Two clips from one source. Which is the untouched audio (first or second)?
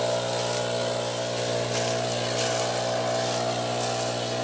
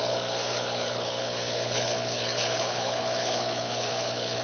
first